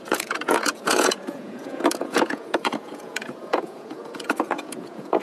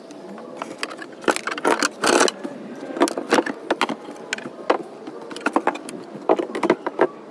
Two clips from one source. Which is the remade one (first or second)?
first